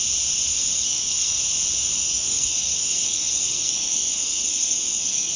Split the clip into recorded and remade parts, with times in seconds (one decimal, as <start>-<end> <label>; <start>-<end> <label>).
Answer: 0.0-0.5 recorded; 0.5-1.4 remade; 1.4-2.0 recorded; 2.0-5.4 remade